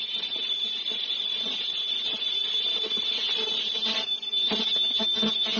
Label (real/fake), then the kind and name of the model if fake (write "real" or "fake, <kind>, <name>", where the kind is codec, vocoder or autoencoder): real